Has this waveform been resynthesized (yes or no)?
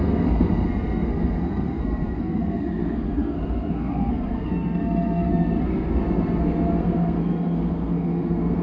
yes